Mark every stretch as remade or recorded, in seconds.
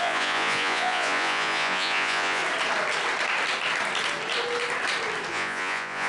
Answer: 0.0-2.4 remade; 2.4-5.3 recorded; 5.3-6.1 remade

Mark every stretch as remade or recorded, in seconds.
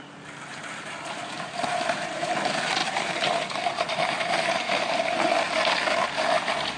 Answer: 0.0-0.5 recorded; 0.5-2.3 remade; 2.3-2.8 recorded; 2.8-5.3 remade; 5.3-6.8 recorded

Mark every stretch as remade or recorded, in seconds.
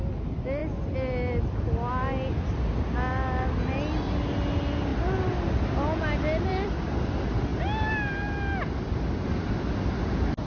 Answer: 0.0-10.5 recorded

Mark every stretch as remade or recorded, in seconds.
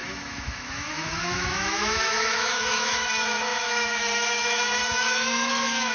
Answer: 0.0-5.9 remade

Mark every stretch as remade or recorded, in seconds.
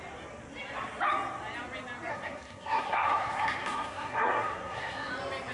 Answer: 0.0-2.1 recorded; 2.1-5.1 remade; 5.1-5.5 recorded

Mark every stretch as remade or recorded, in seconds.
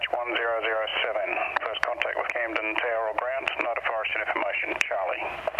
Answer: 0.0-0.9 recorded; 0.9-2.3 remade; 2.3-4.1 recorded; 4.1-5.6 remade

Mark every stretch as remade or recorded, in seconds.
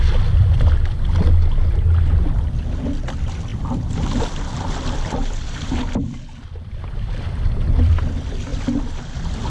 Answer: 0.0-3.5 recorded; 3.5-8.0 remade; 8.0-8.5 recorded; 8.5-9.1 remade; 9.1-9.5 recorded